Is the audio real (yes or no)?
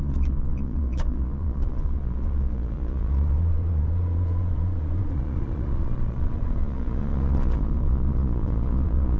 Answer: no